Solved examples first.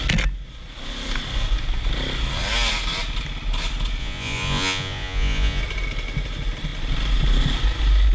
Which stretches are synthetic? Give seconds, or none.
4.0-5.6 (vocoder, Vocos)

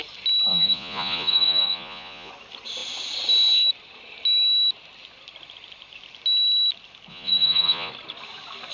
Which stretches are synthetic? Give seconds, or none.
0.5-2.3 (vocoder, Vocos); 7.1-7.9